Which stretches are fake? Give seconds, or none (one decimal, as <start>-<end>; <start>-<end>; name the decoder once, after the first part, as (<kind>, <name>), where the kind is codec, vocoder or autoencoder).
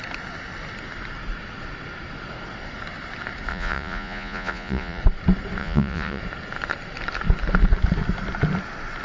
3.5-5.0 (vocoder, Vocos); 5.6-6.2